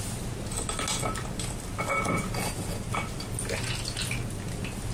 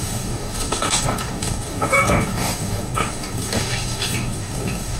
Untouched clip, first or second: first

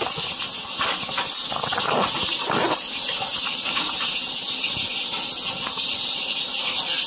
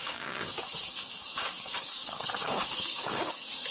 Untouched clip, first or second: first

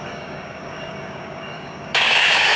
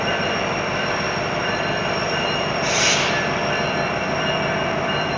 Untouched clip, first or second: second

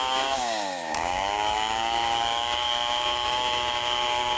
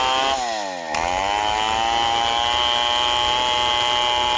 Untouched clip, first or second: second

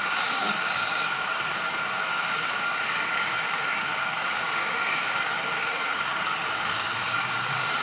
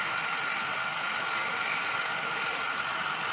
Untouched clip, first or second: second